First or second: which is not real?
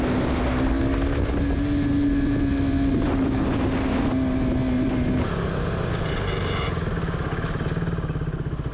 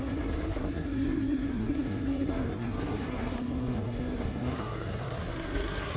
second